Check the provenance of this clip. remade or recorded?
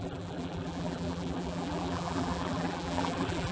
remade